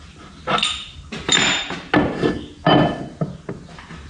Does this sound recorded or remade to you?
recorded